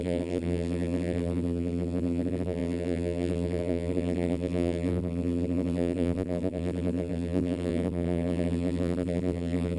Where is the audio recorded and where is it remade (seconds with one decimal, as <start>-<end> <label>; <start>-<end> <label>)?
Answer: 0.0-9.8 remade